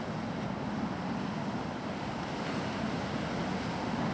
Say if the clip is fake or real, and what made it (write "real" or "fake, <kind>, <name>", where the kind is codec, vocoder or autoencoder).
real